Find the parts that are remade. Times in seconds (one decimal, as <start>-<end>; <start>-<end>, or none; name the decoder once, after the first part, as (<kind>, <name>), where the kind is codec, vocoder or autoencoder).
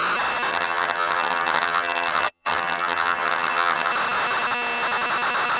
0.5-3.9 (vocoder, HiFi-GAN)